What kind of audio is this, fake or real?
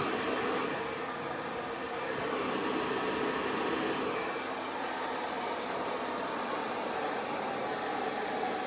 real